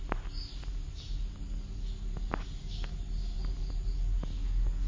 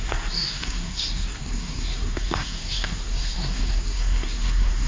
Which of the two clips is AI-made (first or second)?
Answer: second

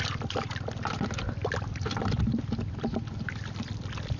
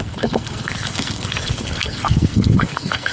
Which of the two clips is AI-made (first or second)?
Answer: second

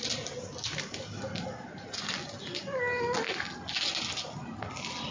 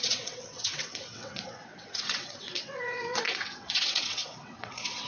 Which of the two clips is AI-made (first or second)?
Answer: second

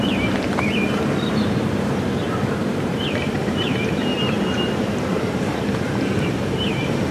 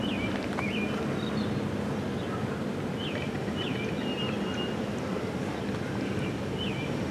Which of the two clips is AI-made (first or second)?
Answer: first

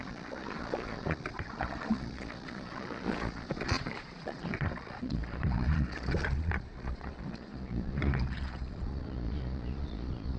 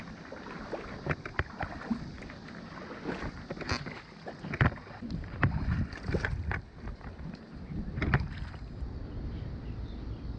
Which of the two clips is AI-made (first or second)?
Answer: first